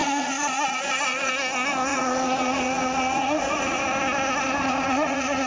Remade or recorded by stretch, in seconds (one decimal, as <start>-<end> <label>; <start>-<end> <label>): 0.0-1.3 remade; 1.3-1.9 recorded; 1.9-3.8 remade; 3.8-4.6 recorded; 4.6-5.5 remade